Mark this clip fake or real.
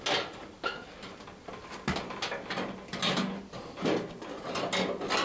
real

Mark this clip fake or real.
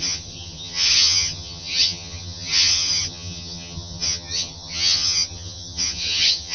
fake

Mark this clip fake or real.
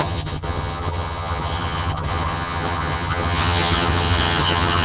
fake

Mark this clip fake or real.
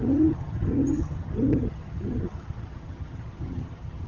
fake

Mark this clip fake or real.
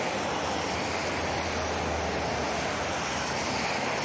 real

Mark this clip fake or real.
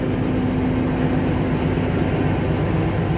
real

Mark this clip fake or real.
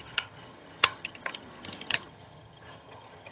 fake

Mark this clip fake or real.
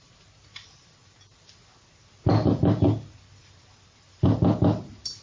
real